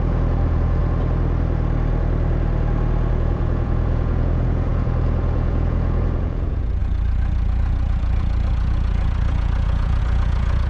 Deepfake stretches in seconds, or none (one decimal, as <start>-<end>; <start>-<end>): 0.0-0.8; 3.1-10.7